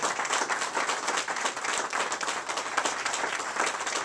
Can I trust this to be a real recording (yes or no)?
no